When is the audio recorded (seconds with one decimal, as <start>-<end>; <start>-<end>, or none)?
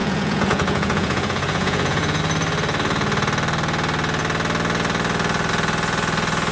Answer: 2.2-6.5